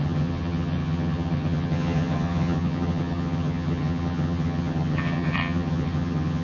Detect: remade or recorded remade